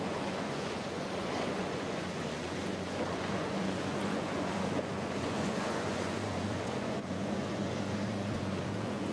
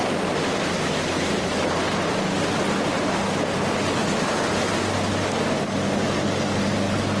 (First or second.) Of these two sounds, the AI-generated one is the first